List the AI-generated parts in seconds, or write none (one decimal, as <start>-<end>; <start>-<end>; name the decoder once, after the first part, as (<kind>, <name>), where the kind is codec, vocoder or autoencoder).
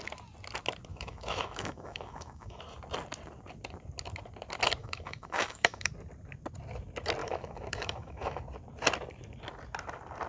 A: 0.9-2.6 (autoencoder, DAC-VAE); 4.8-5.9; 7.2-8.4